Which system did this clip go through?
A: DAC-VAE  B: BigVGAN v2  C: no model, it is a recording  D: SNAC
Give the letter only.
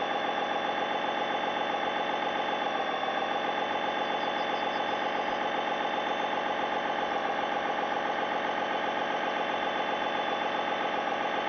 C